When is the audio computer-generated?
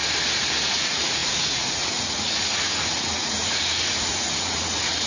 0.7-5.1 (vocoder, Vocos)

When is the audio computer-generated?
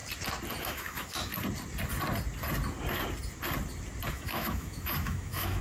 0.6-1.3 (autoencoder, DAC-VAE); 4.1-5.6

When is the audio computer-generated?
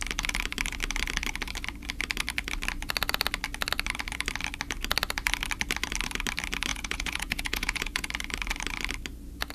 6.7-8.1 (vocoder, Vocos)